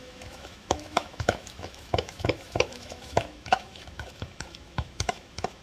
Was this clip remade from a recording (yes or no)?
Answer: yes